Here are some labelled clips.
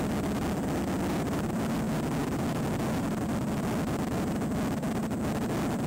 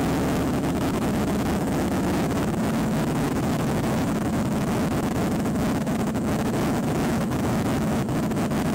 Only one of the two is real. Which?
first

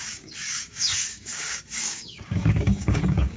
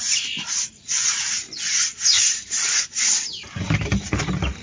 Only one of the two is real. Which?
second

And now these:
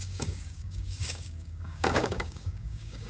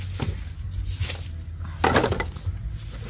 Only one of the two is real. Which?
second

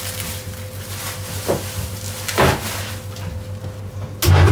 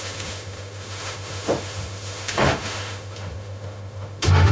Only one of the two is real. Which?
first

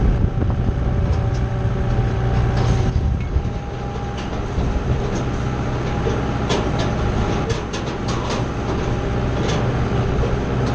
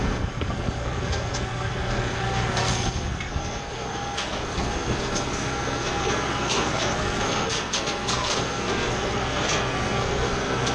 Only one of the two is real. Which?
first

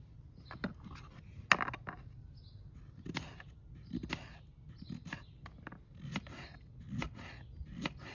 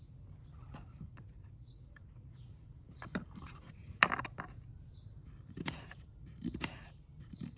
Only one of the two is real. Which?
first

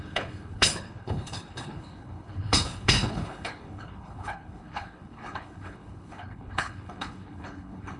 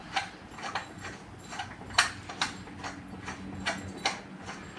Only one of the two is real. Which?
second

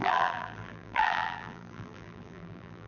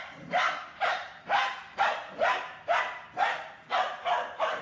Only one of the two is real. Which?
second